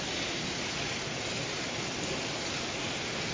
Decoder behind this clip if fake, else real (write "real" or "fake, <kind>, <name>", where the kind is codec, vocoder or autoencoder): real